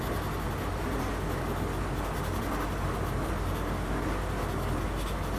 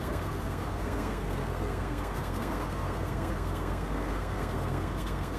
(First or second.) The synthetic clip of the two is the second